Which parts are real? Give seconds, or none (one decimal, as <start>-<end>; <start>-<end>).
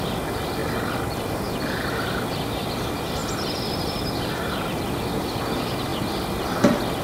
0.0-0.6; 1.6-3.2; 4.3-7.0